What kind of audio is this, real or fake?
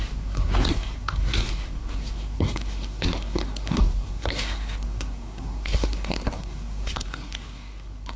fake